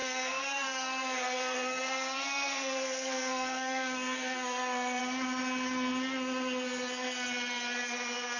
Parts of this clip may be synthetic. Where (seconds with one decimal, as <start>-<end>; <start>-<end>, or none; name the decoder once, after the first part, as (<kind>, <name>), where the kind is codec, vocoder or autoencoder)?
0.0-5.0 (codec, SNAC)

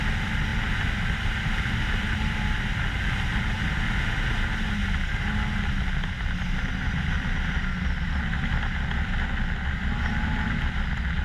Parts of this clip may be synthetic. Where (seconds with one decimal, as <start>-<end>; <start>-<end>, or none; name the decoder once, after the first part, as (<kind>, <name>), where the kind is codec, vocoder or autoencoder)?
none

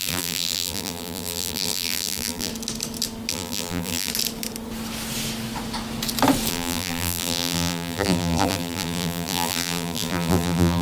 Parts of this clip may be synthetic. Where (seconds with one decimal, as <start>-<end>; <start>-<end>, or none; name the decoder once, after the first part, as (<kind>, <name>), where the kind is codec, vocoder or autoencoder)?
0.0-2.5 (vocoder, BigVGAN v2); 3.3-4.1; 6.5-10.8

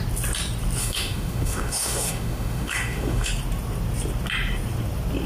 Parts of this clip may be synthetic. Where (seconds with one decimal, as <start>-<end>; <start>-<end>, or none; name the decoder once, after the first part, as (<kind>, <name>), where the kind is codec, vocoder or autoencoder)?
0.8-3.3 (autoencoder, DAC-VAE)

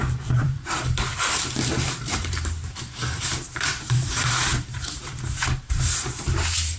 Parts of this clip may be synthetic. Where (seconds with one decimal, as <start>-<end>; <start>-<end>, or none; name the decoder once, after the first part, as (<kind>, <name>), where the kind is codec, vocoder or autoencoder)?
0.0-6.8 (vocoder, BigVGAN v2)

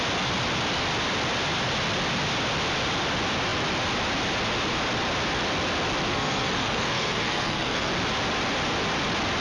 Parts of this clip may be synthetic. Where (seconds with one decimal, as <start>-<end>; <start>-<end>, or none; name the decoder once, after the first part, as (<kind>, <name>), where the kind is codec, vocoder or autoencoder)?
6.1-7.9 (codec, SNAC)

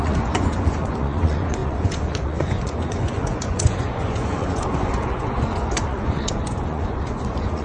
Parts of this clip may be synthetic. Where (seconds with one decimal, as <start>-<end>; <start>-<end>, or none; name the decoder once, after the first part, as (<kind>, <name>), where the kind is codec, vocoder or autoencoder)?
0.0-7.6 (vocoder, Vocos)

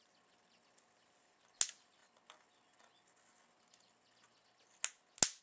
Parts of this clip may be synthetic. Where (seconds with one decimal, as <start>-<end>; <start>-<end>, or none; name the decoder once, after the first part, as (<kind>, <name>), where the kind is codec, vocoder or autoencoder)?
none